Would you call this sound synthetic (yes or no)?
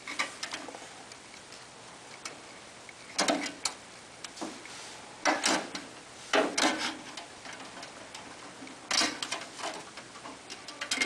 no